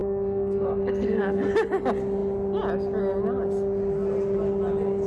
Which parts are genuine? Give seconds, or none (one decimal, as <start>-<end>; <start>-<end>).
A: 1.5-5.1